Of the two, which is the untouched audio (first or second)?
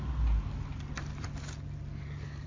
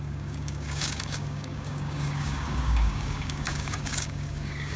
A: first